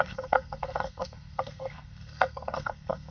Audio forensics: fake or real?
fake